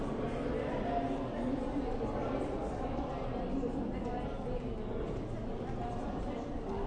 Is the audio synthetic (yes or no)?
no